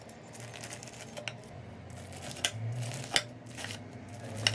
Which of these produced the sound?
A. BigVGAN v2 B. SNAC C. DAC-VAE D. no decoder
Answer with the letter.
D